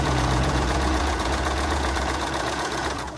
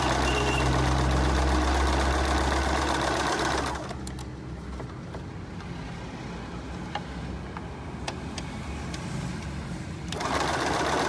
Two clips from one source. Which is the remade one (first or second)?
first